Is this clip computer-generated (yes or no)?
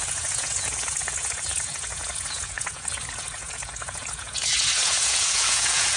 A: yes